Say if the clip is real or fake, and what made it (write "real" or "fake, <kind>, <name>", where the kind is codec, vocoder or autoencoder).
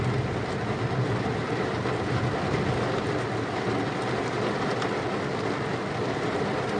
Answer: real